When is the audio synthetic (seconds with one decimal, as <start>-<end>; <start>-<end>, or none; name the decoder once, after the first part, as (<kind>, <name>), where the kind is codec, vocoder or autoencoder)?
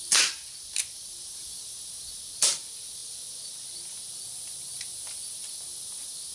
none